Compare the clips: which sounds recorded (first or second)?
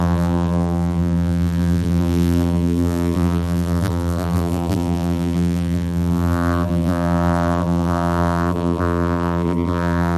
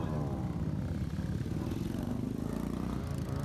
second